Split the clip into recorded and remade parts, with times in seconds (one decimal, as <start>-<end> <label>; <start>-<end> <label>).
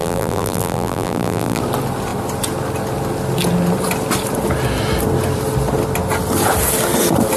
0.0-1.6 remade; 1.6-7.4 recorded